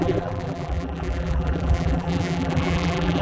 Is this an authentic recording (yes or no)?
no